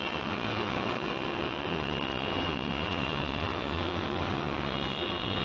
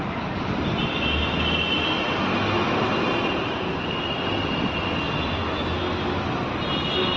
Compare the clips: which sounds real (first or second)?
second